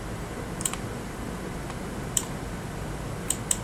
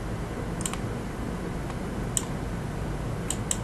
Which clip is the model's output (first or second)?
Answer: first